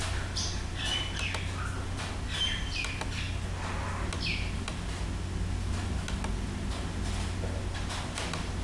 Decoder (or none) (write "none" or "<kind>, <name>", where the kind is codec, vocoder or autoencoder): none